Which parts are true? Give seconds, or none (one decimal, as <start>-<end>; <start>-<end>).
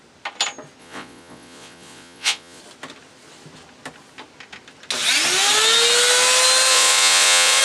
0.0-0.8; 2.6-6.7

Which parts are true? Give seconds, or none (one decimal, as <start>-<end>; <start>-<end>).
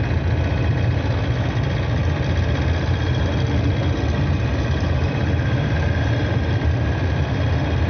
0.0-7.9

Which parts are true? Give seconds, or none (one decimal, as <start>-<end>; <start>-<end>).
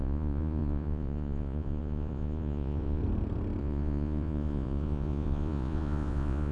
3.0-3.6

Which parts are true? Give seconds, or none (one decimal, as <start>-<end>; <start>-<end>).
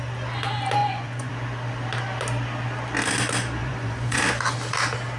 0.0-0.8; 1.3-3.6; 4.2-5.2